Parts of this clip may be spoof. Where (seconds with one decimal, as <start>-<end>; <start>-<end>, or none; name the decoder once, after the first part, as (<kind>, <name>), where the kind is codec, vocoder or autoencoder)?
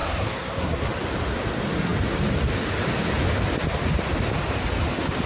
0.0-0.9 (codec, SNAC)